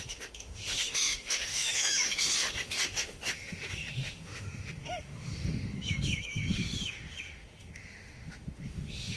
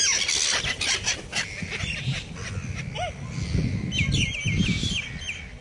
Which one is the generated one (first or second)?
first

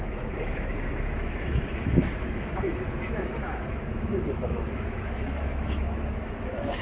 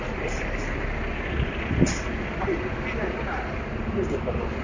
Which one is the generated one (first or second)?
first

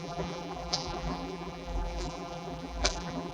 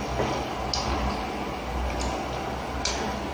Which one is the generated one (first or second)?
first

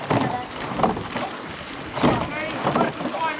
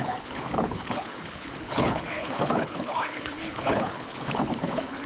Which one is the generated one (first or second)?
second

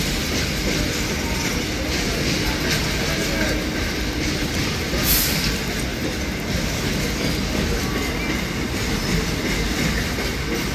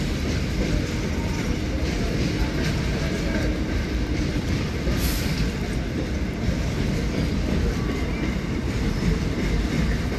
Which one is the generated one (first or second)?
second